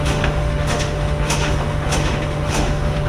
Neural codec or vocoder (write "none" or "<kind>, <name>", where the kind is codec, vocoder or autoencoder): autoencoder, DAC-VAE